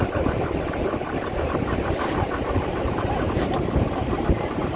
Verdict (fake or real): fake